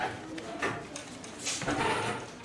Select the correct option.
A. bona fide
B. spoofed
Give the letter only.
B